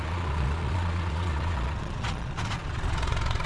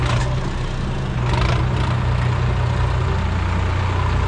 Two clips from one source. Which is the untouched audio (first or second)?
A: second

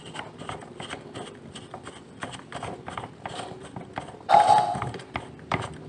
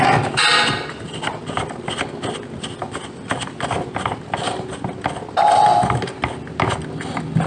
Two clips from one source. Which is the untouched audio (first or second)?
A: second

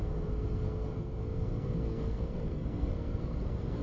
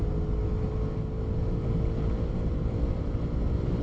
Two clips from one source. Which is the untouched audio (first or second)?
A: second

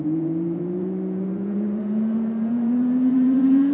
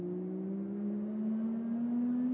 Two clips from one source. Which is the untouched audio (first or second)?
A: second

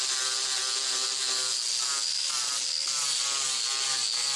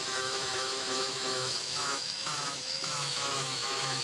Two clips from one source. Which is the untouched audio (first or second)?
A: first